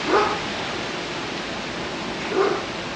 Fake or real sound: real